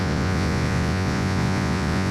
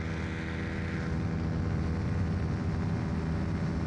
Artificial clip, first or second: first